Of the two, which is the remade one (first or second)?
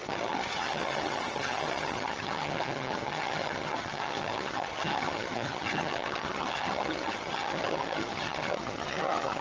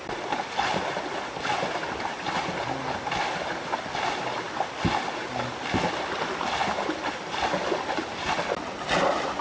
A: first